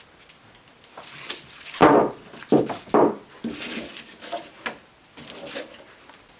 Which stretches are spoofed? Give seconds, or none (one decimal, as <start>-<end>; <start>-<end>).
none